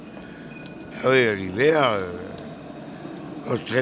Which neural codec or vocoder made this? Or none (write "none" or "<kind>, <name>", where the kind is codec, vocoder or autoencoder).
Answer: none